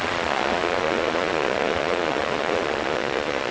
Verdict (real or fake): fake